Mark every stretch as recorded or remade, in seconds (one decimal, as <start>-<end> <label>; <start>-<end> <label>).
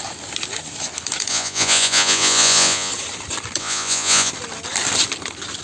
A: 0.0-1.3 recorded; 1.3-2.9 remade; 2.9-3.6 recorded; 3.6-4.3 remade; 4.3-5.6 recorded